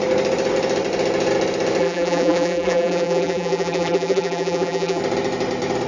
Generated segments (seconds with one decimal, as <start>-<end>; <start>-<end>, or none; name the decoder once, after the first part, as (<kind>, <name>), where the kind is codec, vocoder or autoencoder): 1.8-5.0 (vocoder, BigVGAN v2)